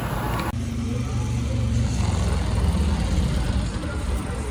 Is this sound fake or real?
real